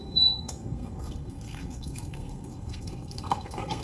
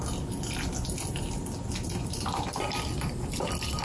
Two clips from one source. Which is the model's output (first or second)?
first